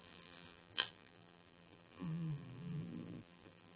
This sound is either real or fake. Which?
fake